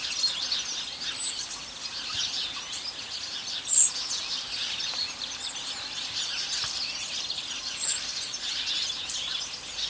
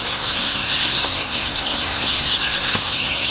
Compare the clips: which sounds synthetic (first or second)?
second